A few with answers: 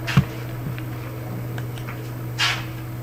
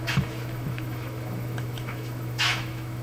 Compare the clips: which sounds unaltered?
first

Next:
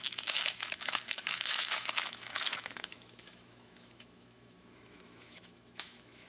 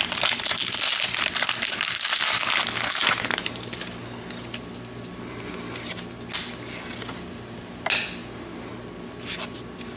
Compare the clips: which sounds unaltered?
second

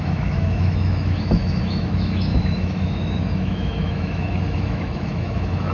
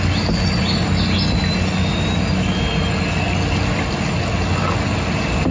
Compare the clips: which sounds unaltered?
second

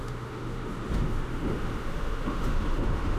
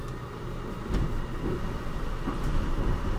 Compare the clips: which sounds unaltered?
second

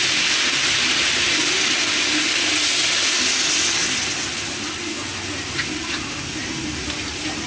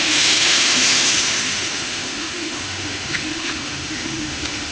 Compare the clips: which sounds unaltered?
first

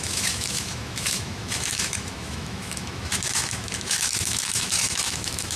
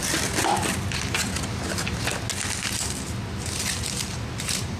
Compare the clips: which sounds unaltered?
second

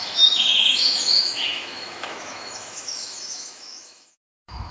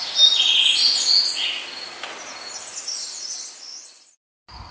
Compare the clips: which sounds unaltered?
second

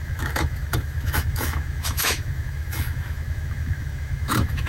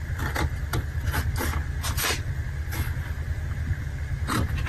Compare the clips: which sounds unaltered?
second